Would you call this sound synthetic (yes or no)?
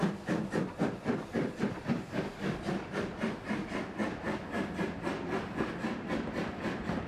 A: no